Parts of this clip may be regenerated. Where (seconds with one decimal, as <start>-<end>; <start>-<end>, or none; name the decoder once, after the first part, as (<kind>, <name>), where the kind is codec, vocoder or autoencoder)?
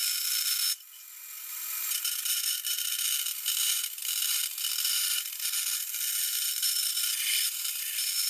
1.5-4.4 (vocoder, BigVGAN v2); 4.9-8.3